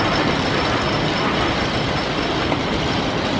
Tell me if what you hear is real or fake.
real